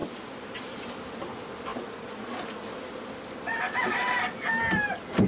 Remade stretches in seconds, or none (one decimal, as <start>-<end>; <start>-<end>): 0.0-0.9